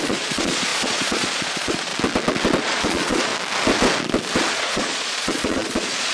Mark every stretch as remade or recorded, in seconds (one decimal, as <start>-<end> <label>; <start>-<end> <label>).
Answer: 0.0-1.9 remade; 1.9-2.6 recorded; 2.6-3.3 remade; 3.3-4.5 recorded; 4.5-6.1 remade